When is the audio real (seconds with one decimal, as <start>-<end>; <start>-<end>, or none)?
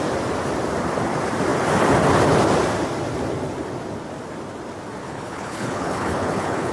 0.0-5.0